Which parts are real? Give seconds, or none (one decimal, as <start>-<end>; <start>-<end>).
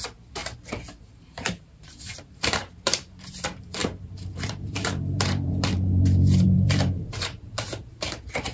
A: 0.4-1.0